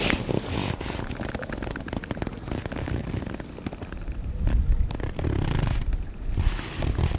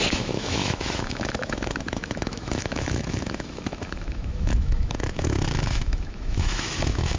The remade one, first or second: second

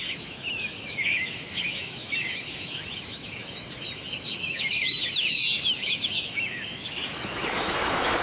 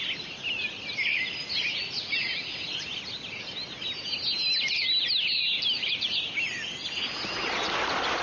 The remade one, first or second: first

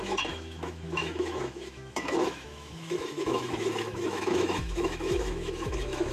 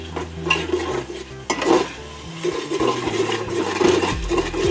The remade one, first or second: first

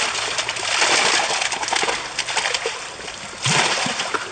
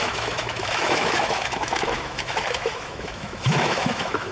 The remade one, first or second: second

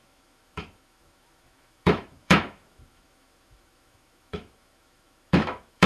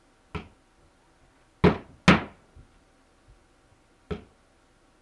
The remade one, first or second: first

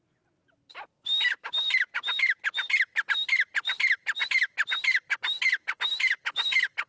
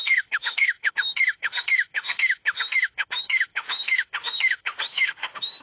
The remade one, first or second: second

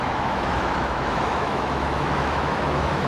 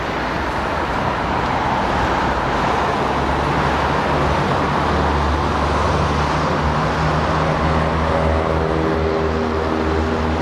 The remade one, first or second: first